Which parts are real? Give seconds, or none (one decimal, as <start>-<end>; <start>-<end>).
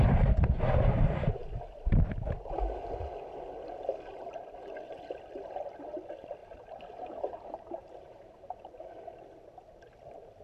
0.0-6.4; 8.8-10.4